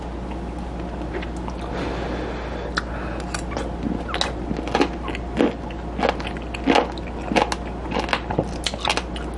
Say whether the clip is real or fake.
real